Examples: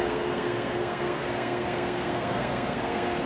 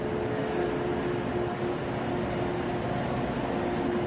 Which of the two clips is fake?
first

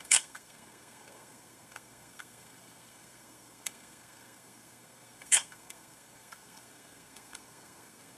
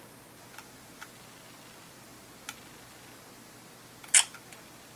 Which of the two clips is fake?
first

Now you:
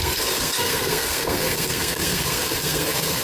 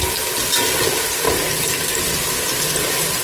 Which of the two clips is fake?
first